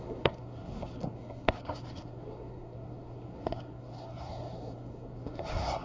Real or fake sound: fake